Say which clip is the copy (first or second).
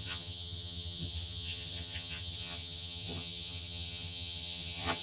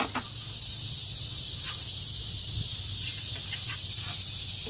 first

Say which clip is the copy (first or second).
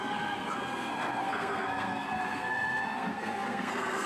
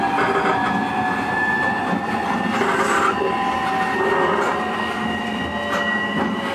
first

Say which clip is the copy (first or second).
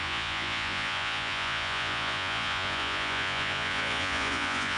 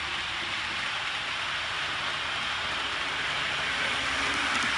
first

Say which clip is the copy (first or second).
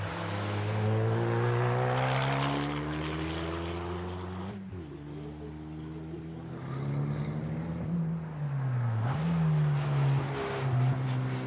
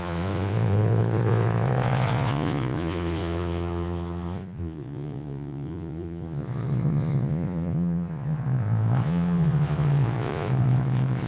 second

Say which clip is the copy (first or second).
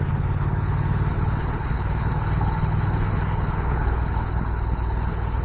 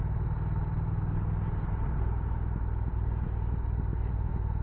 first